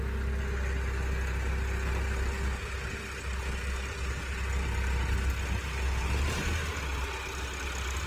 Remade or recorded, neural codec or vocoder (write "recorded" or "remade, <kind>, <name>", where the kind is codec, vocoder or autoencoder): recorded